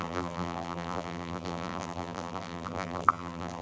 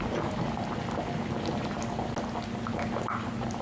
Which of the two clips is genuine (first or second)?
second